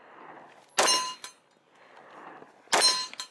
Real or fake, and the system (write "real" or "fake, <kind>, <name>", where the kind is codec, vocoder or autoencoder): real